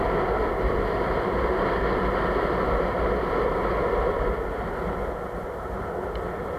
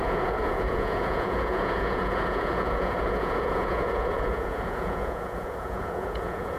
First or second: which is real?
first